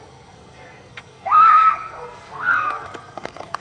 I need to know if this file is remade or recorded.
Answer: remade